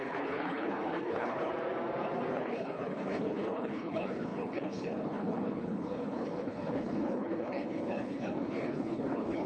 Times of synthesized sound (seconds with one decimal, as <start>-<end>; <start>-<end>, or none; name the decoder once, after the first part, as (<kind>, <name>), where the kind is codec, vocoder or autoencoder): 0.0-1.5 (codec, HILCodec); 2.3-9.5